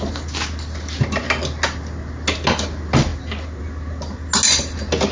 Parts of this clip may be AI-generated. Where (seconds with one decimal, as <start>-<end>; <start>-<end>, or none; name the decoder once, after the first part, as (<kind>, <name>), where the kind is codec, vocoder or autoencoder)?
none